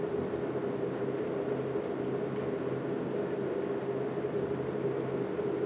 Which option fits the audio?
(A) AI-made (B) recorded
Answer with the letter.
B